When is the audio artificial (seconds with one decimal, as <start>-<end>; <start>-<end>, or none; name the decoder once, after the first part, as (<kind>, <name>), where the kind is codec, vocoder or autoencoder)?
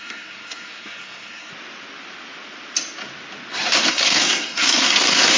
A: 0.0-1.5 (codec, SNAC); 3.9-5.4